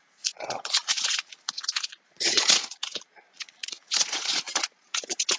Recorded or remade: remade